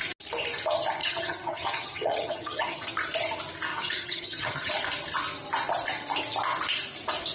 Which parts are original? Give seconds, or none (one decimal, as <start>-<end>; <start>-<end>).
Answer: 0.0-1.0; 2.9-3.7; 4.7-7.3